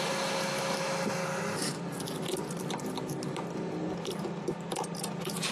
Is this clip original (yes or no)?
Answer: yes